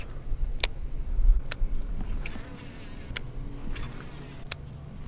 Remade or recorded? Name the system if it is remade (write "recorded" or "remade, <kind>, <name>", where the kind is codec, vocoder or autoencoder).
recorded